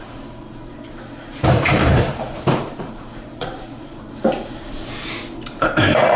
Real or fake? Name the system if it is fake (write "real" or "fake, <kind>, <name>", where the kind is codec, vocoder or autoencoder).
fake, vocoder, BigVGAN v2